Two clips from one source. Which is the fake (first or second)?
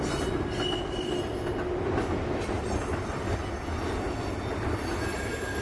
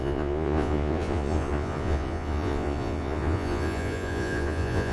second